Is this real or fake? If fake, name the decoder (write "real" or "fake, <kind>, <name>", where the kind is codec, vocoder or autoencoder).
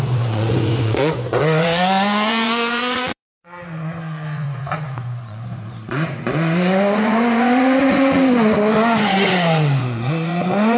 fake, vocoder, Vocos